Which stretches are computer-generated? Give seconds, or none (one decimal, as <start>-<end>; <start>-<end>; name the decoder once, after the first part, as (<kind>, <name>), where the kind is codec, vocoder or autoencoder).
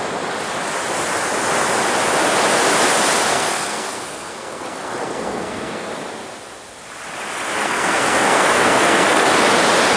3.3-5.9 (codec, SNAC); 7.6-9.3